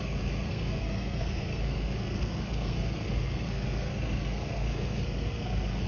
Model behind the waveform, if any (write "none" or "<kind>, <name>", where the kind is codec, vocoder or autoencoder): codec, SNAC